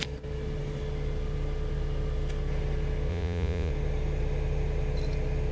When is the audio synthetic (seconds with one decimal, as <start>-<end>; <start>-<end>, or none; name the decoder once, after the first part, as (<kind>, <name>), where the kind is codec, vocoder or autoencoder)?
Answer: 3.1-3.7 (vocoder, Vocos)